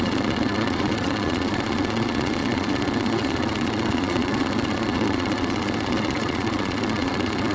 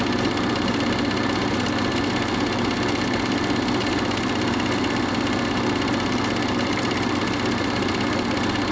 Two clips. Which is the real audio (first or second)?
second